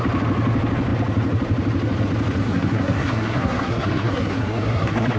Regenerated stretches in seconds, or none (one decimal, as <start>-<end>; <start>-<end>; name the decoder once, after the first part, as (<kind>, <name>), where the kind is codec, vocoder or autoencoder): 2.4-5.2 (codec, SNAC)